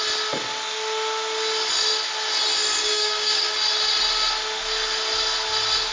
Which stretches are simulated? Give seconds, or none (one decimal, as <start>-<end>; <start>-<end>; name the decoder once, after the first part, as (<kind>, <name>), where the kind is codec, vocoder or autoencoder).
2.8-3.5 (codec, DAC)